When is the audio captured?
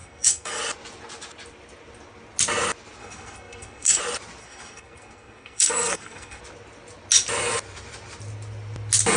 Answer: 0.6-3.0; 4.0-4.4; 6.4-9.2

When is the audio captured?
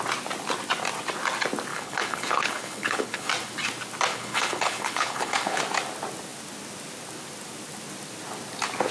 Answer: 0.0-1.7; 3.3-4.1; 5.6-8.9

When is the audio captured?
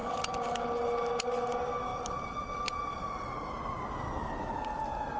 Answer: 0.0-1.9; 3.6-5.2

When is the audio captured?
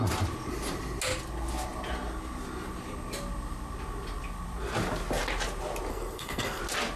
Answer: 0.0-5.9; 6.6-7.0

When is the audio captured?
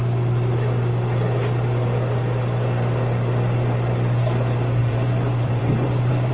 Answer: 0.0-4.8